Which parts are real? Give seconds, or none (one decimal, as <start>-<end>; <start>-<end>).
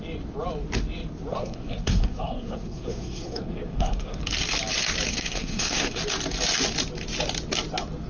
0.0-1.3; 4.2-5.1; 6.0-8.1